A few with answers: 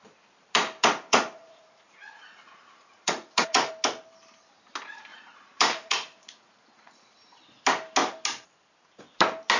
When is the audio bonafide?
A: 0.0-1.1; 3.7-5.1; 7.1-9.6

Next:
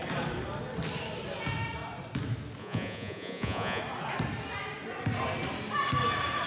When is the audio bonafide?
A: 0.0-2.6; 3.8-6.5